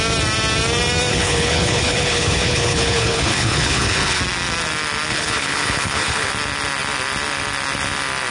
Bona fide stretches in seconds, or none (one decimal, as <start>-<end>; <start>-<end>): 0.0-1.1; 4.2-5.1; 6.3-8.3